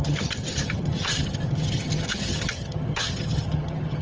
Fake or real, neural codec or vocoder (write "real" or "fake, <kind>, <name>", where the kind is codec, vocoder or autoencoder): fake, vocoder, HiFi-GAN